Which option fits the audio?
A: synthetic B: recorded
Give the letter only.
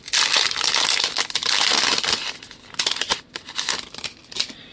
B